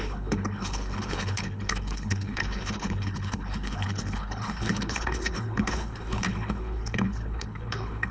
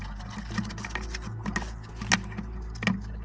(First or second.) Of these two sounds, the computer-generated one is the first